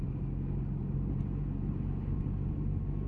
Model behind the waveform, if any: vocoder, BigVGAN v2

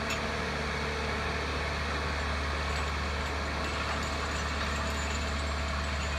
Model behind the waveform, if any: none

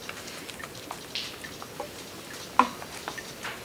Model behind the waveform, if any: none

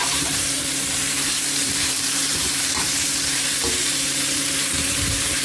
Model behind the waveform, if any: vocoder, BigVGAN v2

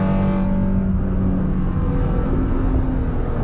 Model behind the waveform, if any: none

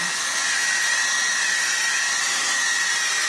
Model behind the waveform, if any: none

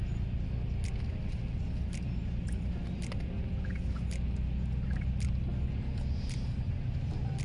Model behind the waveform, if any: none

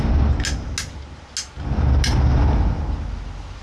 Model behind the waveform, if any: none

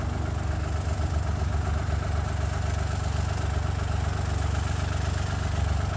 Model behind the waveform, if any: none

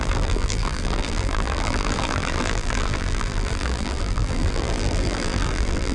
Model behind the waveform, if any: vocoder, BigVGAN v2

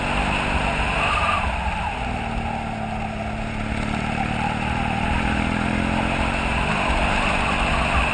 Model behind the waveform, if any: none